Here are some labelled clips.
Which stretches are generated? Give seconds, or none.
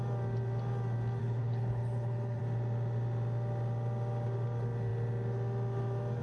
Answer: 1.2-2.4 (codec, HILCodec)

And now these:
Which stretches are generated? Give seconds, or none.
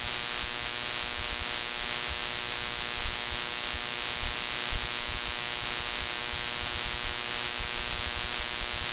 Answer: none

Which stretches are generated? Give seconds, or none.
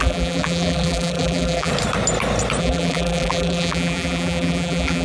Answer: 0.0-1.7 (vocoder, BigVGAN v2); 2.6-5.0